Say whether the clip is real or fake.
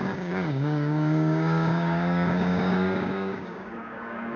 fake